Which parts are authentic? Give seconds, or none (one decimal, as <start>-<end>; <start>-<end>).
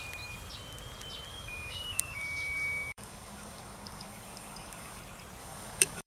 0.0-1.3; 5.0-5.4